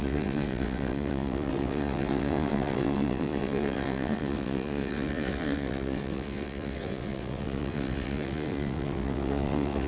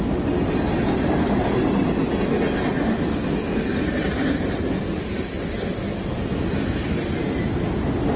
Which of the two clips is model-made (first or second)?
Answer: first